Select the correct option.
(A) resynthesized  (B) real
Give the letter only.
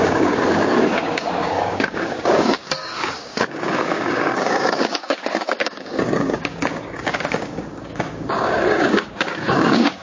A